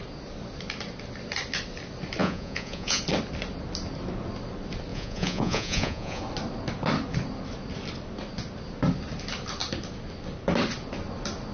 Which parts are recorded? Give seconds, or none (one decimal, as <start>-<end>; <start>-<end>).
0.0-2.2; 3.0-4.9; 6.2-11.5